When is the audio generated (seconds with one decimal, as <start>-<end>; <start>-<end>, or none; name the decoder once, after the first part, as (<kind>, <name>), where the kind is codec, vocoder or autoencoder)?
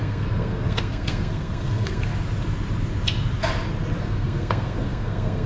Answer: 0.0-2.1 (codec, SNAC); 4.0-5.5